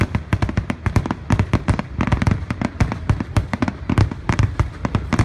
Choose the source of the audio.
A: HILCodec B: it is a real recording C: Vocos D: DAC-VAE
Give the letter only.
B